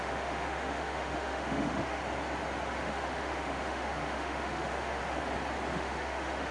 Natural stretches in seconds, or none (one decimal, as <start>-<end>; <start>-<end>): 2.0-2.8; 5.0-5.7